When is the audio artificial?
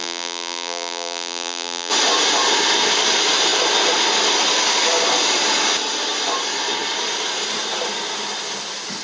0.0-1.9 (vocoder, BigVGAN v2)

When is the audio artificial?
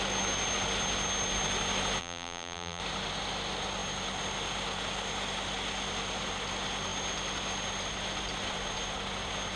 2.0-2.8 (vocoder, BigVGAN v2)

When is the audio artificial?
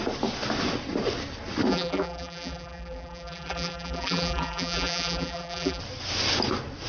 1.7-5.8 (vocoder, BigVGAN v2)